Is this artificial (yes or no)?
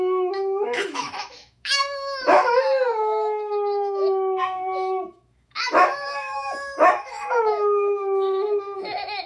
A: yes